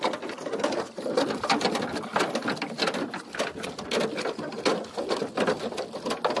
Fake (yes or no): no